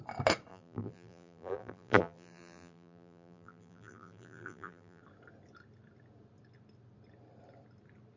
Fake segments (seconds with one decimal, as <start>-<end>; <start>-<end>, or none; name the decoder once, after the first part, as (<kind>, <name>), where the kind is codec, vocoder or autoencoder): 0.5-5.0 (vocoder, BigVGAN v2)